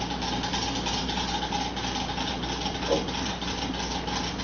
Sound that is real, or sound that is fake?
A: real